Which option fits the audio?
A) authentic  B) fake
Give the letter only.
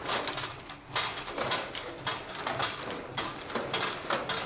A